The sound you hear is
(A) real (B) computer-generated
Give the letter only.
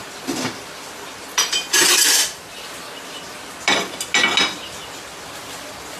A